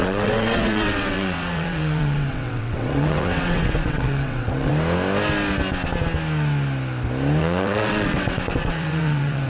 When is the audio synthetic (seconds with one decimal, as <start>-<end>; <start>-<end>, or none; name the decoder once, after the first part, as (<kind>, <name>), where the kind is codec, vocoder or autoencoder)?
0.0-4.7 (vocoder, WaveNeXt); 7.4-9.5